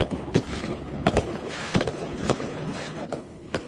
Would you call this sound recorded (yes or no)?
no